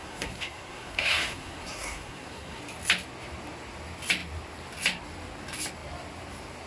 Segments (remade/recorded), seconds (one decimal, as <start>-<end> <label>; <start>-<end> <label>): 0.0-2.6 remade; 2.6-6.7 recorded